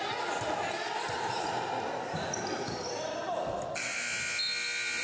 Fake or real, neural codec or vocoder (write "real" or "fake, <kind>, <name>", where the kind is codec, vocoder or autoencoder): real